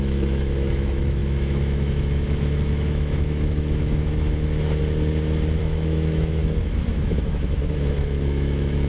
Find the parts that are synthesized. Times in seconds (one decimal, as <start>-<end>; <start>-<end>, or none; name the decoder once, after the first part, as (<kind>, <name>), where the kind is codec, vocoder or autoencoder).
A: 0.0-4.8 (autoencoder, DAC-VAE); 5.6-8.9